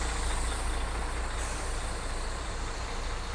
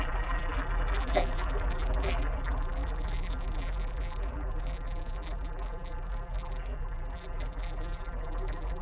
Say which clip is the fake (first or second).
second